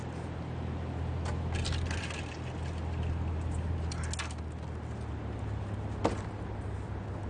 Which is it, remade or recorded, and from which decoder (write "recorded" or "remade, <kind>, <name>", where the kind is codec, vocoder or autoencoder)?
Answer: recorded